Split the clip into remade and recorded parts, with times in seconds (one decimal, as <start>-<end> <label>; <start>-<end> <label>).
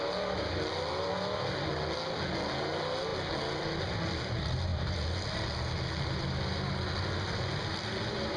0.0-8.4 recorded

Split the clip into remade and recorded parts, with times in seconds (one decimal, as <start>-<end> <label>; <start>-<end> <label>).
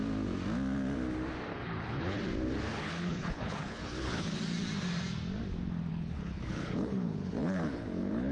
0.0-1.5 recorded; 1.5-2.2 remade; 2.2-2.7 recorded; 2.7-4.4 remade; 4.4-5.9 recorded; 5.9-8.3 remade